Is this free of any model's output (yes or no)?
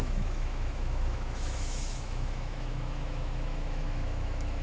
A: no